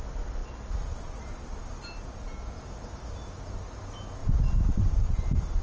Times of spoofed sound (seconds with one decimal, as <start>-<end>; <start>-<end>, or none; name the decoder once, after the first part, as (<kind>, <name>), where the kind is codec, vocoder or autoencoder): 4.2-4.9 (vocoder, BigVGAN v2)